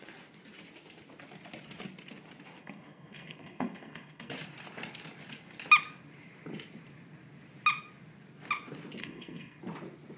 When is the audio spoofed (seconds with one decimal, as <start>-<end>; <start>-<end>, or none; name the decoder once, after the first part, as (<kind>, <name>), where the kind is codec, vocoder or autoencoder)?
2.6-4.3 (codec, SNAC); 9.0-9.6